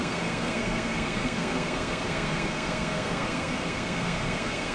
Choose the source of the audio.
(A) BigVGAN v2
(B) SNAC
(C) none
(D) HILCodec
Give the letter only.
B